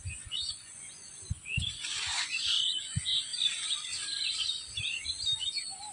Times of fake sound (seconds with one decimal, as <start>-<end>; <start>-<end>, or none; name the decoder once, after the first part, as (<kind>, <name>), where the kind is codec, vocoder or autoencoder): 0.0-3.3 (vocoder, Vocos)